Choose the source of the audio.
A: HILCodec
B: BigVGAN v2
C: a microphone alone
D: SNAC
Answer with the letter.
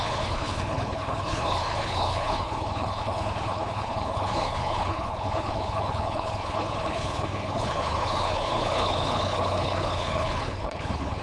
A